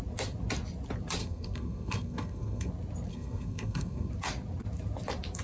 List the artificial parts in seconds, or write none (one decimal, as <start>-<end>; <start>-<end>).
1.2-2.7; 3.1-4.1